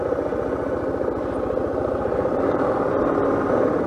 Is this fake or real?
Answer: real